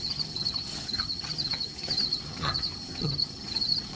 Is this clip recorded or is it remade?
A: remade